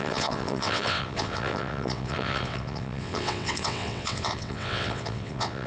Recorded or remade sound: remade